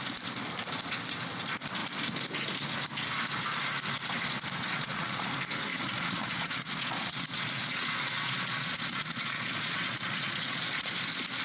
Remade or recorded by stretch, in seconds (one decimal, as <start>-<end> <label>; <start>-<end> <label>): 0.0-4.7 recorded; 4.7-5.3 remade; 5.3-5.7 recorded; 5.7-10.9 remade; 10.9-11.4 recorded